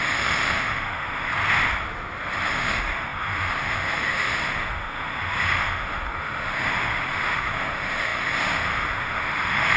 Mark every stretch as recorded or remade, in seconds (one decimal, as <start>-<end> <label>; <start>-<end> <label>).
0.0-1.3 remade; 1.3-2.5 recorded; 2.5-9.8 remade